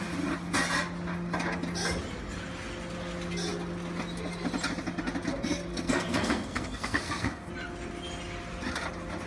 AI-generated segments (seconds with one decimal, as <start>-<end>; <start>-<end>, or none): 5.7-7.5